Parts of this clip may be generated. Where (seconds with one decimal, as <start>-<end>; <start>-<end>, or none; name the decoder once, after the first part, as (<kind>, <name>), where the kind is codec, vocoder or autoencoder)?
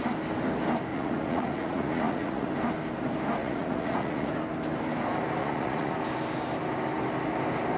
0.9-2.5 (vocoder, Vocos); 3.4-4.3; 5.4-6.0